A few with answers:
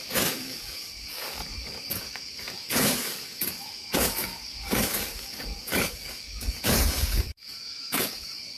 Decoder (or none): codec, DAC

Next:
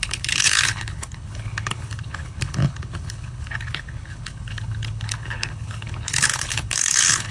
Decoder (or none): codec, HILCodec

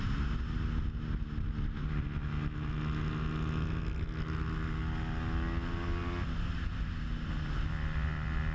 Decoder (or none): none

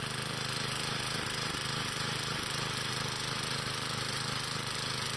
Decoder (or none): none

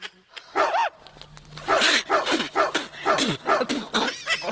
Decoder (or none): none